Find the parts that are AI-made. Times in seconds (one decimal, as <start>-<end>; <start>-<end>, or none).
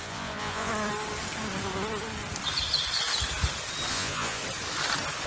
0.0-0.7; 3.9-4.4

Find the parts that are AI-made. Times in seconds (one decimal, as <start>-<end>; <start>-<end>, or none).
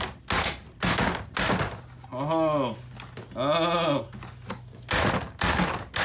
none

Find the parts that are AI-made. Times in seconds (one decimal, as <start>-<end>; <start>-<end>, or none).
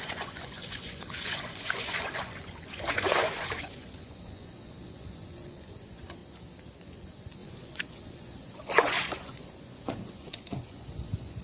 0.0-6.2; 6.8-11.4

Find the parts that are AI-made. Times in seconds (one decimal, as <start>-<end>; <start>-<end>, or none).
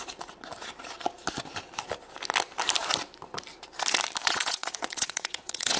4.2-5.8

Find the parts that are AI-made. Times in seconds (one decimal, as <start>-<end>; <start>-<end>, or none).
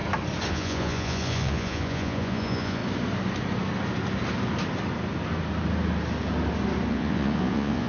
0.5-2.8; 6.9-7.9